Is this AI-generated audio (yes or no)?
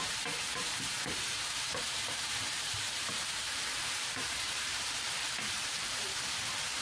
yes